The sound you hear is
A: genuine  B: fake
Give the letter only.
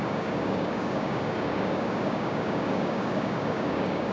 B